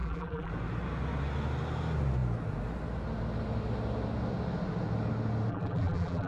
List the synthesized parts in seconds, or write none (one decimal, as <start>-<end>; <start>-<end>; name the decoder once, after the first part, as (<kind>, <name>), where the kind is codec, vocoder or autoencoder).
0.0-0.5 (vocoder, BigVGAN v2); 5.5-6.3